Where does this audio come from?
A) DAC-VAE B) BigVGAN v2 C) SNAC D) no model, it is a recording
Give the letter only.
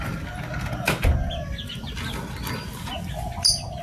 D